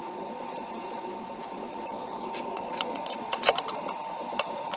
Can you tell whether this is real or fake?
fake